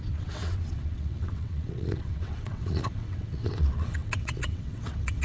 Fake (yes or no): yes